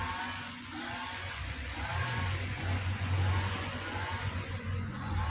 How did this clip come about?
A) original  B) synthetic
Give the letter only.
B